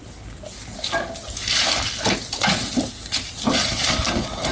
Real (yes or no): yes